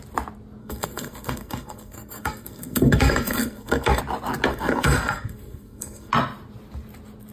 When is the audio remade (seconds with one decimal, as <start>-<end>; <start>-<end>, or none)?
0.6-4.0; 4.5-6.1